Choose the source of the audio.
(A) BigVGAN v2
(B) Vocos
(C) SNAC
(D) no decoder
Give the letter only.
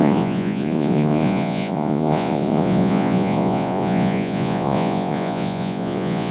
B